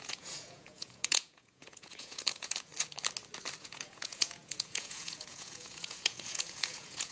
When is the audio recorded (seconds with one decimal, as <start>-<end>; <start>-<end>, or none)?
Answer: 2.7-3.6